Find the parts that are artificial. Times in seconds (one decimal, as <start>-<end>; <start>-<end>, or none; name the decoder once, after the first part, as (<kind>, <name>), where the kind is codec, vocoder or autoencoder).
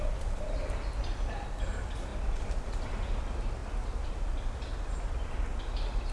none